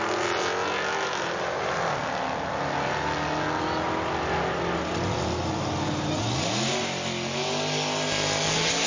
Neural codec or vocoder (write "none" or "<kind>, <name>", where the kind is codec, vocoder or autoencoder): none